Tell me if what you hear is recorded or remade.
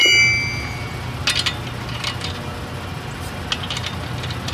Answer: recorded